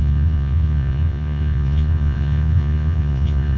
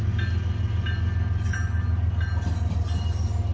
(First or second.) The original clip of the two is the second